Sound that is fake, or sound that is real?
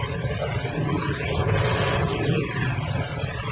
fake